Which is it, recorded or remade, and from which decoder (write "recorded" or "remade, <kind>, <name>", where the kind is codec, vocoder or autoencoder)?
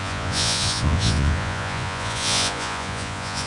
remade, vocoder, Vocos